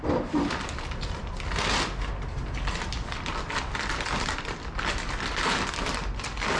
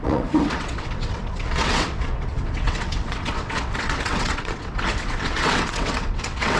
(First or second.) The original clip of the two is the first